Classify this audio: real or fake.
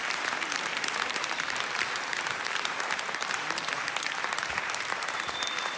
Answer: fake